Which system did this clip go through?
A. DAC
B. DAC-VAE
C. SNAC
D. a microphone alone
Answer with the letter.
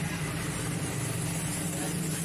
D